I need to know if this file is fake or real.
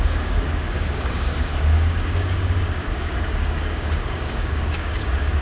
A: fake